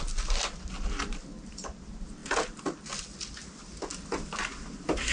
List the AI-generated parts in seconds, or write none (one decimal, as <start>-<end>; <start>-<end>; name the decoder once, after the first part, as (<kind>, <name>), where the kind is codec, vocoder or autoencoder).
none

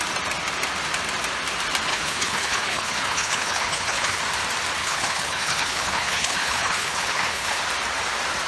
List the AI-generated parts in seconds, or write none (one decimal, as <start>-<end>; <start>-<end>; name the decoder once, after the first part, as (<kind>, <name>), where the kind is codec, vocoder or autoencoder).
1.9-4.2 (codec, HILCodec); 4.8-7.6